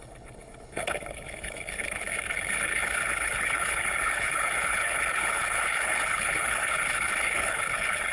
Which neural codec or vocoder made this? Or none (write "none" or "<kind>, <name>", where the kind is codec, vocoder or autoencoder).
codec, HILCodec